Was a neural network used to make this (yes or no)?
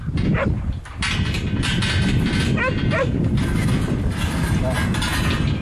no